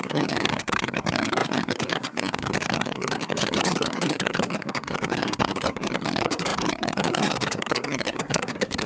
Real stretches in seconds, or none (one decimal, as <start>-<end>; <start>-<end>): none